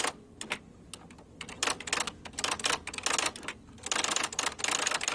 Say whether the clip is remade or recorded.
recorded